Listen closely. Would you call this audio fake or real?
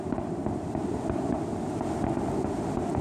real